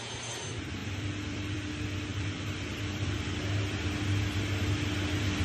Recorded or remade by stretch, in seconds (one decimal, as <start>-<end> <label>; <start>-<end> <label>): 0.0-0.8 recorded; 0.8-1.7 remade; 1.7-2.1 recorded; 2.1-3.3 remade; 3.3-5.4 recorded